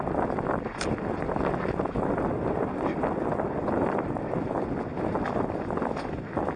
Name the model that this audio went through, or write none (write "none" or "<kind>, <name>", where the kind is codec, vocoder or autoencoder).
none